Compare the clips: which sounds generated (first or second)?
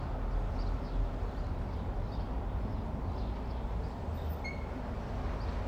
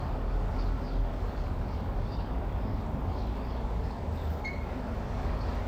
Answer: second